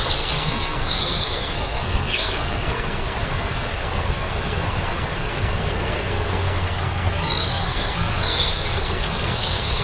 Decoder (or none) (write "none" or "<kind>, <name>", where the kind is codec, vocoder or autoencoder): codec, SNAC